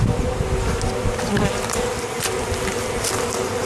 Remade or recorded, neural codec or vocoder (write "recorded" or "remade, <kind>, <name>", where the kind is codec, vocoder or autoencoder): recorded